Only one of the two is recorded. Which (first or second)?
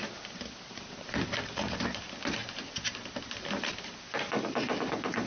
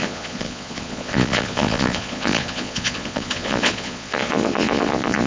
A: first